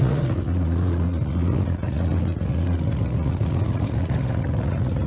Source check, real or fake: fake